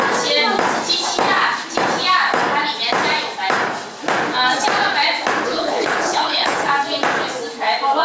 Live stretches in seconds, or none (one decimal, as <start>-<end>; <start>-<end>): 0.0-5.5; 6.7-8.0